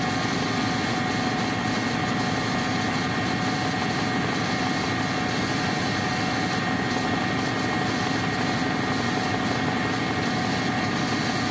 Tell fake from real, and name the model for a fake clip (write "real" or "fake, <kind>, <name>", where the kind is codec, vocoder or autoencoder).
real